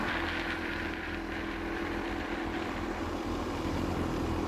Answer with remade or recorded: recorded